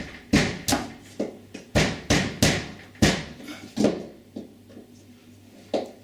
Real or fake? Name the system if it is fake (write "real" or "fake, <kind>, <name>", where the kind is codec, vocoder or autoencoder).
real